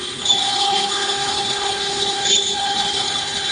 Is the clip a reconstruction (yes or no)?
yes